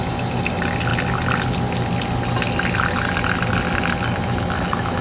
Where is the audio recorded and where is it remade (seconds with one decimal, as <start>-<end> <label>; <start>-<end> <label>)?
0.0-5.0 recorded